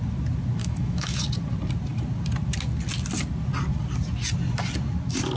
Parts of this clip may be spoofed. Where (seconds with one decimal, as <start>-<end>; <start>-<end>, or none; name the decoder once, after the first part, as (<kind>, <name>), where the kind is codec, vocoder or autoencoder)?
0.6-1.2 (autoencoder, DAC-VAE)